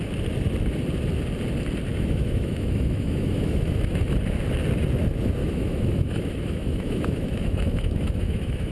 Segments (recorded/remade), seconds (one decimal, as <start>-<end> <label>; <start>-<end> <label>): 0.0-1.9 recorded; 1.9-4.0 remade; 4.0-5.4 recorded; 5.4-8.7 remade